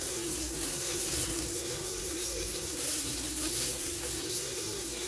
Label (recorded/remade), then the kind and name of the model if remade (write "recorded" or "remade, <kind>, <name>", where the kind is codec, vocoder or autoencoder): remade, codec, SNAC